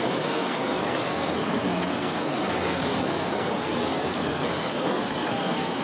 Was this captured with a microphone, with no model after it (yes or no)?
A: no